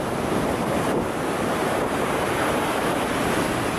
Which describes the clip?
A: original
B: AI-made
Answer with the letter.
B